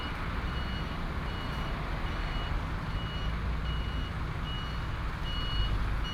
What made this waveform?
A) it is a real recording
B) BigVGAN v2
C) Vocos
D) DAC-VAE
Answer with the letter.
A